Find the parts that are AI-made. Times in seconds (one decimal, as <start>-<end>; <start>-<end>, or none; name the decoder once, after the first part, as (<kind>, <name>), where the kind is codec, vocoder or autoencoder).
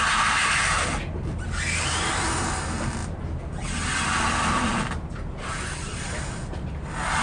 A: none